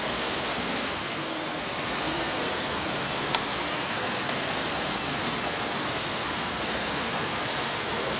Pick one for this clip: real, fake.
fake